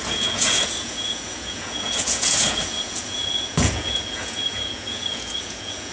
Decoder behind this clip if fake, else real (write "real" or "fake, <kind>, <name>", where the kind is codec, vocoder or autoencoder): fake, vocoder, Vocos